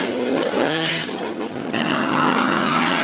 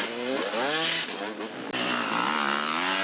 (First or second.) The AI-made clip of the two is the first